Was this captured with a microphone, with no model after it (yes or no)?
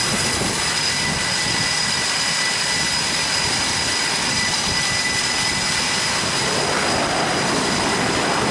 yes